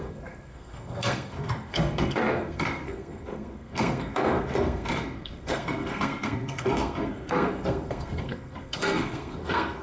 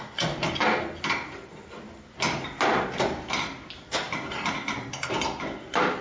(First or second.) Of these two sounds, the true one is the second